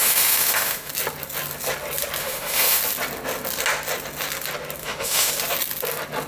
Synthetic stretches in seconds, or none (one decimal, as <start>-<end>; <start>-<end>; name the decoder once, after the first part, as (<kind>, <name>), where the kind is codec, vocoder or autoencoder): 0.0-0.9 (autoencoder, DAC-VAE); 2.2-2.8; 4.8-5.3